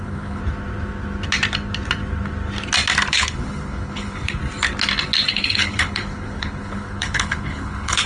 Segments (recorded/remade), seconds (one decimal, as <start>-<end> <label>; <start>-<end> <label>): 0.0-0.4 remade; 0.4-3.1 recorded; 3.1-4.4 remade; 4.4-5.3 recorded; 5.3-8.1 remade